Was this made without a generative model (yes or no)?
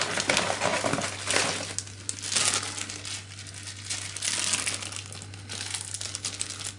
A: yes